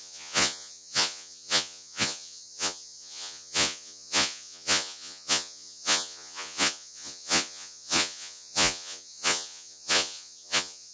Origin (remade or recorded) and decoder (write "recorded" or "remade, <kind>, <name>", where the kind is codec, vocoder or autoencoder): remade, vocoder, Vocos